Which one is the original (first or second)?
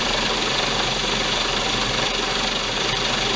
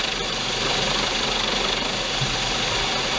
first